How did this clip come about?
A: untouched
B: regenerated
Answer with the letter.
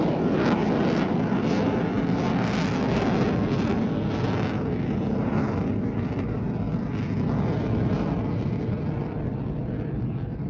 A